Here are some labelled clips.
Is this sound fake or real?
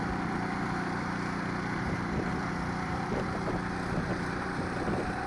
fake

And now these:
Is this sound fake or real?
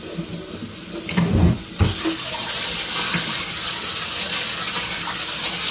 real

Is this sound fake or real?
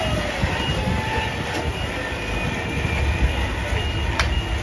real